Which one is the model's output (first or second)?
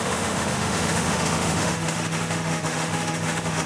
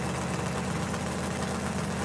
first